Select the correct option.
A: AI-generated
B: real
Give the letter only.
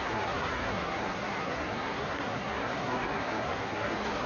A